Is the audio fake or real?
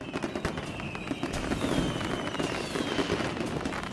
real